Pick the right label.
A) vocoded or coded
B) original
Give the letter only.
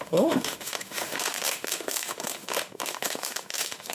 A